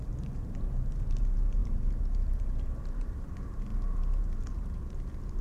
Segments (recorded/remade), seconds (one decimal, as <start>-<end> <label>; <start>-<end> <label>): 0.0-3.7 remade; 3.7-4.2 recorded; 4.2-5.4 remade